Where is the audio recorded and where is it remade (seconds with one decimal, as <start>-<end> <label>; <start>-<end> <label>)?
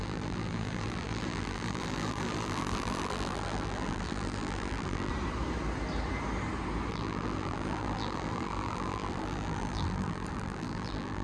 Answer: 0.0-5.1 remade; 5.1-6.9 recorded; 6.9-11.2 remade